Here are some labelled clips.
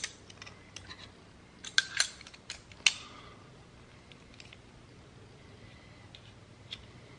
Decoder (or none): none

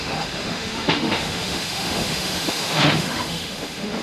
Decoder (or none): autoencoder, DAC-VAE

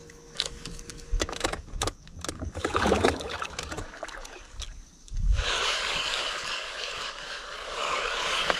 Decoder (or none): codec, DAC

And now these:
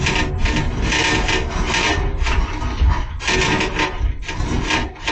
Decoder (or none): none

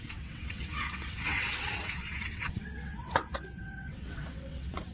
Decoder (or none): vocoder, WaveNeXt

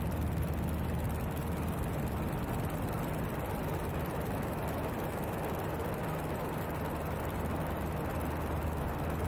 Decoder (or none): none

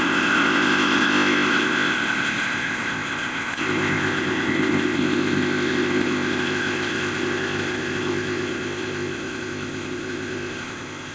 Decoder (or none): codec, ZipCodec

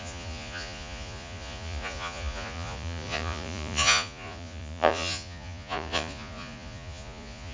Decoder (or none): vocoder, Vocos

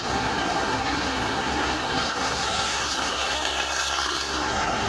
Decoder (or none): codec, SNAC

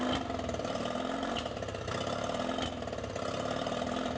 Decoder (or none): none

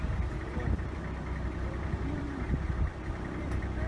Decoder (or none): vocoder, BigVGAN v2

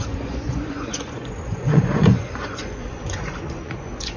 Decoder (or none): vocoder, Vocos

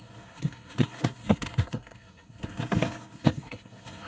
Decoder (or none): codec, SNAC